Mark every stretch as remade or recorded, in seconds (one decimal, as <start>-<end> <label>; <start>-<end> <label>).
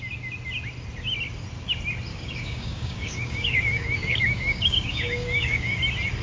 0.0-2.1 recorded; 2.1-5.8 remade; 5.8-6.2 recorded